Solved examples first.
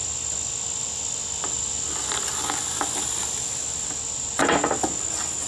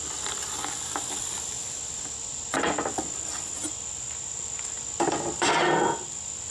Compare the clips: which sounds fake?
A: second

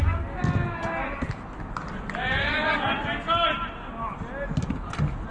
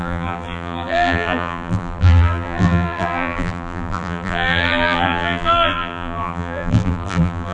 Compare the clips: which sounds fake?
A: second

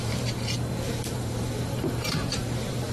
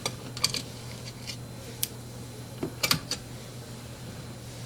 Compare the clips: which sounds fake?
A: first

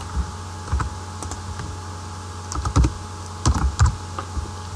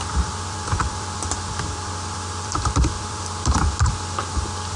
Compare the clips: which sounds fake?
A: second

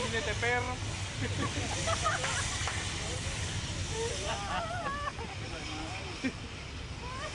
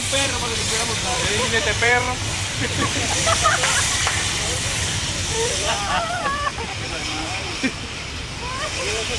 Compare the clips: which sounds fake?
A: second